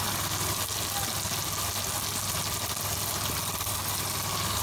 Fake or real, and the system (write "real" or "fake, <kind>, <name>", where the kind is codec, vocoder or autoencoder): real